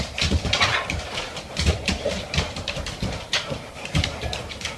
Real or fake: fake